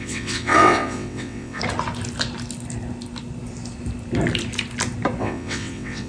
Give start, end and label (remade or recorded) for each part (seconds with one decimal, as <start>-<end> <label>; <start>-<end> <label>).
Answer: 0.0-1.6 remade; 1.6-5.2 recorded; 5.2-6.1 remade